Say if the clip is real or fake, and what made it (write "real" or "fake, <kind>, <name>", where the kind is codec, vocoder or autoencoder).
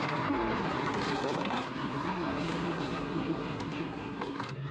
fake, codec, SNAC